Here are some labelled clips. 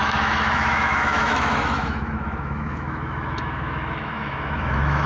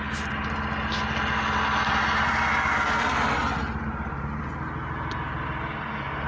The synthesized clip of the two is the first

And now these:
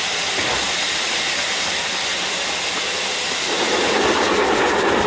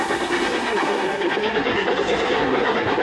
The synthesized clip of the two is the second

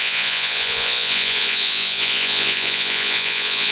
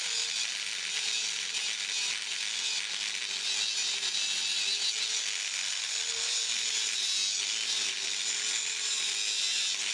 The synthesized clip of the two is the first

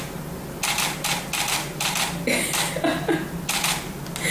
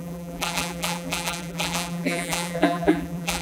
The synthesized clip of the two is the second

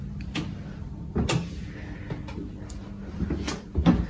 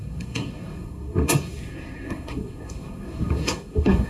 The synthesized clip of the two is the second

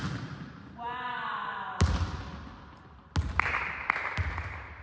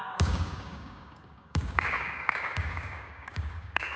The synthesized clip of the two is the second